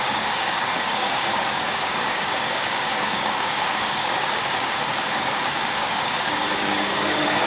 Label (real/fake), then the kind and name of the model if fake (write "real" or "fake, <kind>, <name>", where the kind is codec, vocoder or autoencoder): fake, codec, DAC